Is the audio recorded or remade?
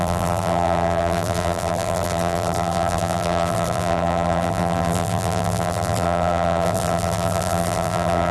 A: remade